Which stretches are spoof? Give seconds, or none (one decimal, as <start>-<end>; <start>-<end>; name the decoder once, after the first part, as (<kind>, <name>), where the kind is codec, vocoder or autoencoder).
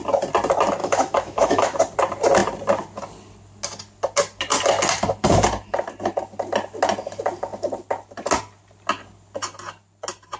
0.8-1.8 (autoencoder, DAC-VAE)